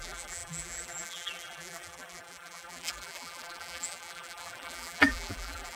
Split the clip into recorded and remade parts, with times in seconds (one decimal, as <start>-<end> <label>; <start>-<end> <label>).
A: 0.0-5.8 remade